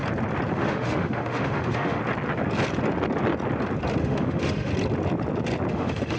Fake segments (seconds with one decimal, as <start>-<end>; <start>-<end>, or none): 0.5-2.0; 4.0-4.7; 5.7-6.2